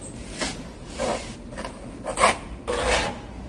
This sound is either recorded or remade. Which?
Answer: recorded